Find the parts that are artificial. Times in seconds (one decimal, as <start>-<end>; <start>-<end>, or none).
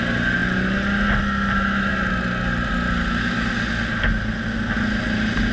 none